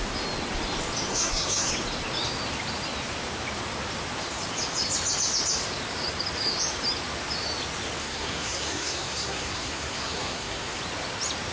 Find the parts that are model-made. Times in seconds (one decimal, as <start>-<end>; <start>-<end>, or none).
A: 1.1-1.7; 8.0-10.8